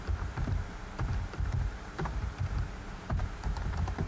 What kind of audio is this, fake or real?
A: fake